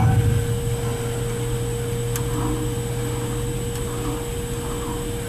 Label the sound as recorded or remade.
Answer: recorded